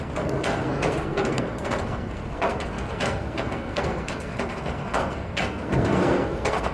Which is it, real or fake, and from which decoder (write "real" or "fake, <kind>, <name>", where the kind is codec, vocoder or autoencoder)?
fake, codec, SNAC